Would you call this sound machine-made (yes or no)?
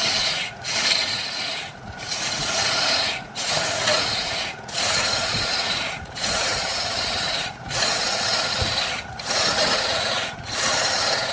yes